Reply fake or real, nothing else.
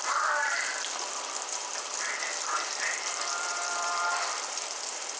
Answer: fake